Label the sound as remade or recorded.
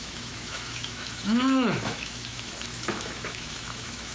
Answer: remade